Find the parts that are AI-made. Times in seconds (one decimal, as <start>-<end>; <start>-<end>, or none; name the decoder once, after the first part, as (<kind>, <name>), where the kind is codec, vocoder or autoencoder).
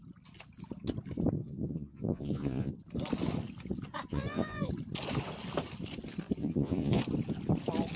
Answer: 1.4-2.7 (vocoder, Vocos); 4.1-4.7; 6.4-7.0